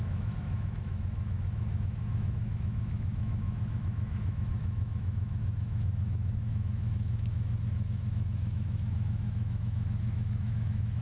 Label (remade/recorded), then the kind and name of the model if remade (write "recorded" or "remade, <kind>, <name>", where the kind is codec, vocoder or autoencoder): remade, autoencoder, DAC-VAE